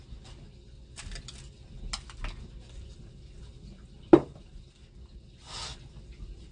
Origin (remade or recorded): recorded